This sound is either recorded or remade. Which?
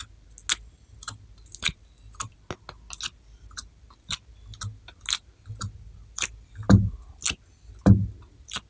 recorded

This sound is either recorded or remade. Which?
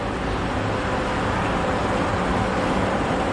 recorded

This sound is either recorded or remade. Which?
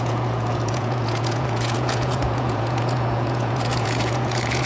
remade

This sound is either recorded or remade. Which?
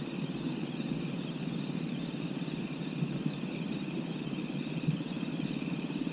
recorded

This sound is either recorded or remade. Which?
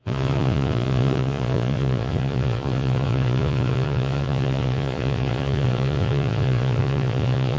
remade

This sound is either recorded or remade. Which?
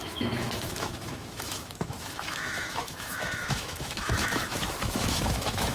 remade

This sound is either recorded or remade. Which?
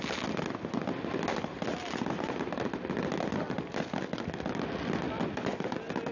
recorded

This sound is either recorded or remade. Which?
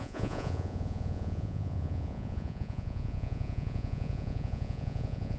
remade